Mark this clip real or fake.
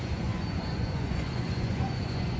fake